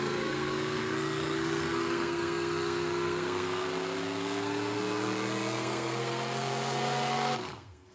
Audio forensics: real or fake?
fake